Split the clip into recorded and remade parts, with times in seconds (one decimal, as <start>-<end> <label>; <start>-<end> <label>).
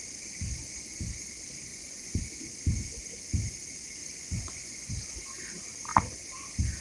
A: 0.0-1.7 recorded; 1.7-2.2 remade; 2.2-4.0 recorded; 4.0-4.9 remade; 4.9-6.8 recorded